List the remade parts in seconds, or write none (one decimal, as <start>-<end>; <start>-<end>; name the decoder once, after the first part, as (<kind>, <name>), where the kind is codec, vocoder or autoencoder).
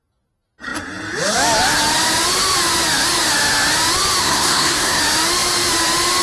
4.2-5.0 (codec, SNAC)